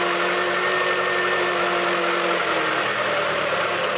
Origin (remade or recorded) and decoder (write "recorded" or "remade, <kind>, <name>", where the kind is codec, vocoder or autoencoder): recorded